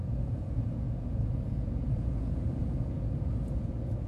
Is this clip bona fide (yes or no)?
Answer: no